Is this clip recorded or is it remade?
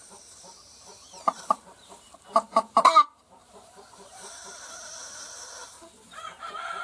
remade